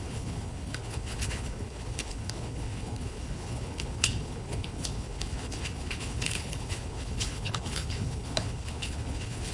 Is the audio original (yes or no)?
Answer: no